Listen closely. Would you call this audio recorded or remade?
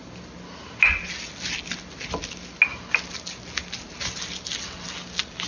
recorded